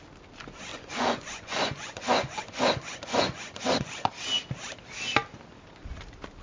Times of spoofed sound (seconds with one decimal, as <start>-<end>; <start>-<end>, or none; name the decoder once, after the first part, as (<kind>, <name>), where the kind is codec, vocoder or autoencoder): 0.7-4.1 (vocoder, Vocos)